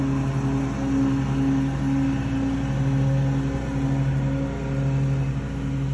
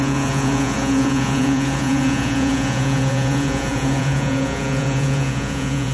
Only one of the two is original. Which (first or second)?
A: first